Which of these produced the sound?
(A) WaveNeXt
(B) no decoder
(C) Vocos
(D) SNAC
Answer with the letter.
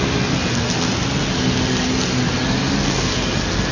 B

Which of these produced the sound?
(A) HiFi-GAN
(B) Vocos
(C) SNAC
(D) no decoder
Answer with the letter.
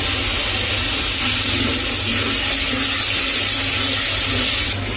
D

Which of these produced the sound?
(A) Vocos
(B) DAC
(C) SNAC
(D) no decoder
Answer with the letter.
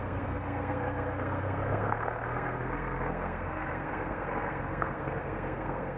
C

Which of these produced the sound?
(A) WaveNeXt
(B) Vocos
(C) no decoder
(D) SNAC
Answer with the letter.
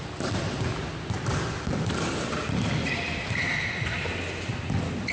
C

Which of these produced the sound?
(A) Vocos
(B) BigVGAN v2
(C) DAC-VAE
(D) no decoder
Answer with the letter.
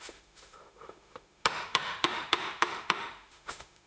C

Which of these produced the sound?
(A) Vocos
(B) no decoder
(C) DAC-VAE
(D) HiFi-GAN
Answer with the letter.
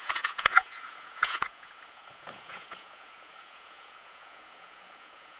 A